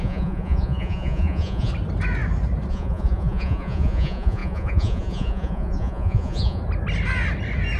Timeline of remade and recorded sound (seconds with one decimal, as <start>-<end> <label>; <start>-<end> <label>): 0.0-1.7 remade; 1.7-2.7 recorded; 2.7-6.6 remade; 6.6-7.8 recorded